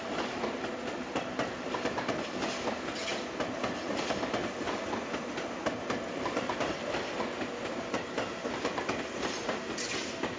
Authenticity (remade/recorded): recorded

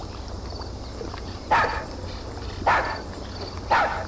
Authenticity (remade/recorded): recorded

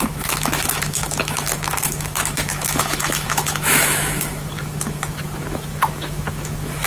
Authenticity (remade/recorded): remade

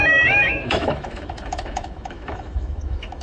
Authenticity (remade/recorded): remade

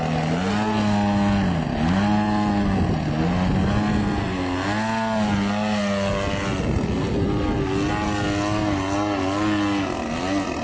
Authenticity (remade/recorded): recorded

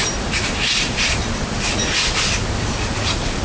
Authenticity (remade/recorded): recorded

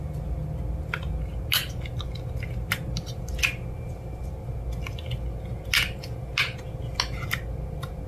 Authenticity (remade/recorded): recorded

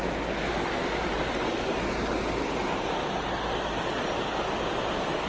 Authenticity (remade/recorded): recorded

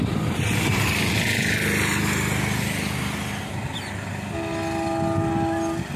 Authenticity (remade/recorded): recorded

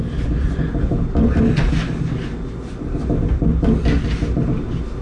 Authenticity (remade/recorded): recorded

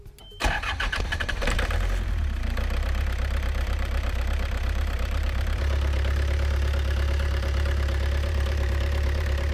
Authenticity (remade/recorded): remade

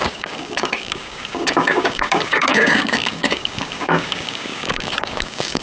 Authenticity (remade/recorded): remade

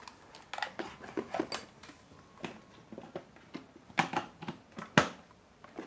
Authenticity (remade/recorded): recorded